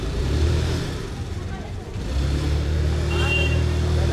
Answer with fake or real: fake